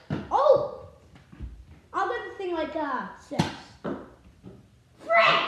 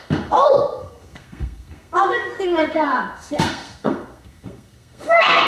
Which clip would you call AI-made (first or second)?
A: second